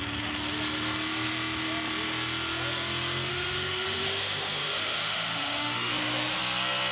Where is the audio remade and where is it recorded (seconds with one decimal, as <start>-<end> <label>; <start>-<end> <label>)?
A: 0.0-3.3 recorded; 3.3-6.4 remade; 6.4-6.9 recorded